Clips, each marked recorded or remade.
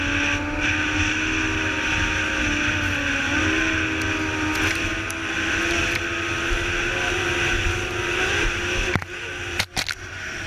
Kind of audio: recorded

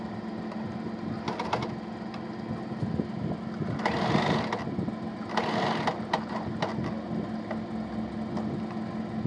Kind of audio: recorded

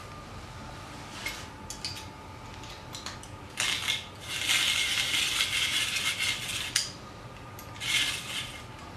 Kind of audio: recorded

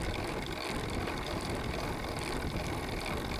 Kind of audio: recorded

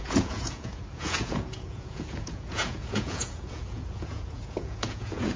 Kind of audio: remade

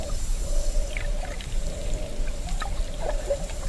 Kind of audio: remade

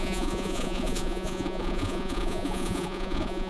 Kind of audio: remade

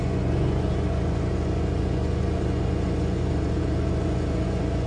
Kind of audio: remade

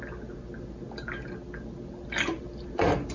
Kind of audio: recorded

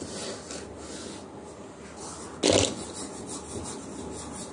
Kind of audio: recorded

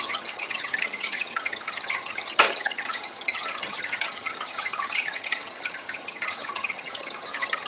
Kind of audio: remade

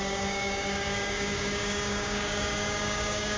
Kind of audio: remade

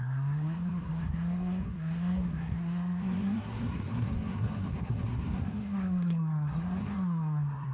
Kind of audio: remade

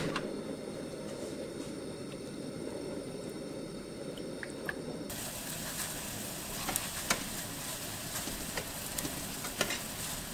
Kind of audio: recorded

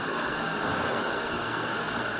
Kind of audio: remade